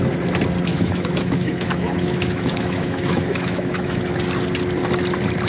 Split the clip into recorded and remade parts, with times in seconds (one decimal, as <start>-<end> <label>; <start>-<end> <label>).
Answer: 0.0-0.7 recorded; 0.7-4.0 remade; 4.0-5.5 recorded